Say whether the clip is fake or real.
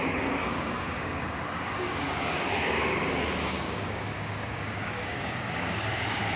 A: fake